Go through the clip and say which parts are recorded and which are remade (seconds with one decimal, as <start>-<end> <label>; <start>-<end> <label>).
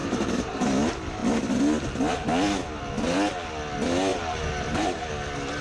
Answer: 0.0-0.6 remade; 0.6-4.1 recorded; 4.1-5.1 remade; 5.1-5.6 recorded